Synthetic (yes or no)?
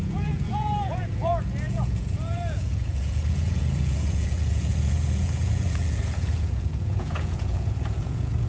yes